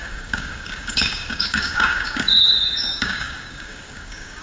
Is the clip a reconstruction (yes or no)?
yes